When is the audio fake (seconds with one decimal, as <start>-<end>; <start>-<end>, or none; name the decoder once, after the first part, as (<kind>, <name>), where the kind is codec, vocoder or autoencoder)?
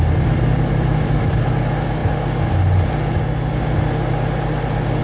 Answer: 0.0-2.0 (vocoder, BigVGAN v2)